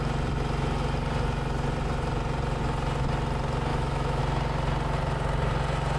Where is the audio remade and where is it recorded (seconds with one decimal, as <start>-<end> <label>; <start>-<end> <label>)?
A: 0.0-3.7 recorded; 3.7-4.2 remade; 4.2-6.0 recorded